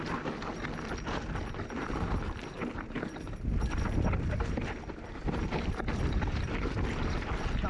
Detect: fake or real real